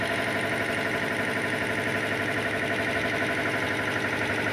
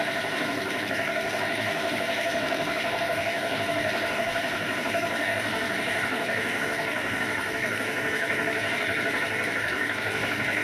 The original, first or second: first